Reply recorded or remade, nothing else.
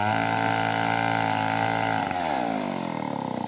recorded